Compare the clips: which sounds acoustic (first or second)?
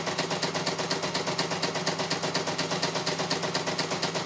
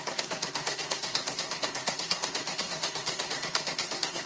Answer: first